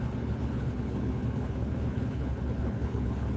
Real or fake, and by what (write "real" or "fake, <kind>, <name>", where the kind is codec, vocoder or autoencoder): fake, codec, HILCodec